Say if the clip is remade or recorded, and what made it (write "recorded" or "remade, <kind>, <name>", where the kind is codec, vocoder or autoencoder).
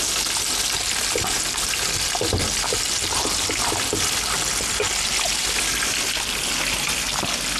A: recorded